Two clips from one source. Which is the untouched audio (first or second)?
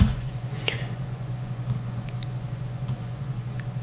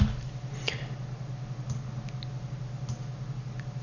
second